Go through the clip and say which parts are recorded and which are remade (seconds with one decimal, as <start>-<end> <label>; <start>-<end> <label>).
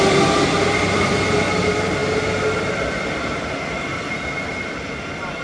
0.0-5.4 recorded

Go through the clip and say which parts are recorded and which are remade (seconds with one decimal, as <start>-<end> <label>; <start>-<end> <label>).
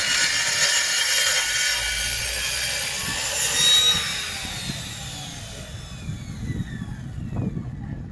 0.0-8.1 recorded